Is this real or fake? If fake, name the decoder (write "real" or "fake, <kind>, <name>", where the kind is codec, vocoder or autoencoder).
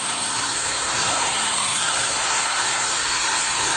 fake, codec, SNAC